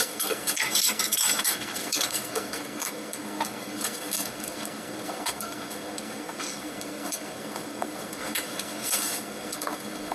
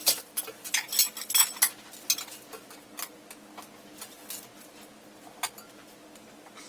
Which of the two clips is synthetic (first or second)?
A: first